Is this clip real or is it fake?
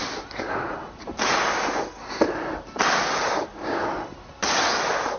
real